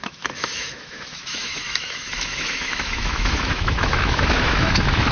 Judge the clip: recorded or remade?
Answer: remade